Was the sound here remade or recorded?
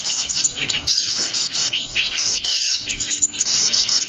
remade